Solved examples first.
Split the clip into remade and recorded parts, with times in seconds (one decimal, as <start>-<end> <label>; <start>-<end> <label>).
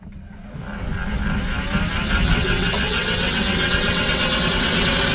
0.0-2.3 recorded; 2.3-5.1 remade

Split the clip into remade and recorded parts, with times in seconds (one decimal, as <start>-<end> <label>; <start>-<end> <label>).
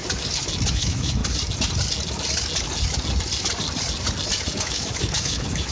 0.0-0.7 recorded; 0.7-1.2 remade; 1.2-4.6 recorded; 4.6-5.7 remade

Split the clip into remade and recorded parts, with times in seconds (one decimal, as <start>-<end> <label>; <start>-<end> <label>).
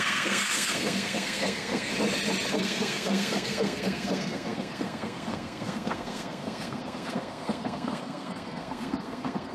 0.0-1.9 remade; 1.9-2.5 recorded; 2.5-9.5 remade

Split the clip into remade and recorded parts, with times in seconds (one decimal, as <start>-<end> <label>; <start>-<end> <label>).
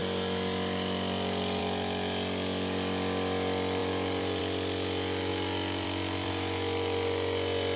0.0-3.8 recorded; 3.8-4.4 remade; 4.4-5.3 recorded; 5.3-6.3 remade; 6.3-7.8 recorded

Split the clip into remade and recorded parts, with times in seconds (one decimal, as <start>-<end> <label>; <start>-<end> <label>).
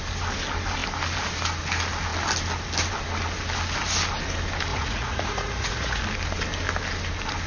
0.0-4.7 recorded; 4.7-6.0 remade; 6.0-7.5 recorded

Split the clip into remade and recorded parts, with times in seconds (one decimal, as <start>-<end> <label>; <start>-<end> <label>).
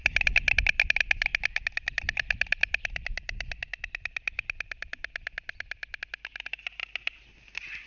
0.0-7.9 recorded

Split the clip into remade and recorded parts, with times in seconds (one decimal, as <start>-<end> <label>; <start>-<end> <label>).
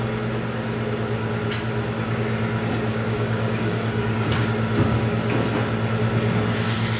0.0-2.9 recorded; 2.9-4.4 remade; 4.4-7.0 recorded